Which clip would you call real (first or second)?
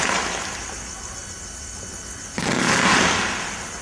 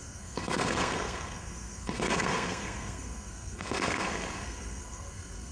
first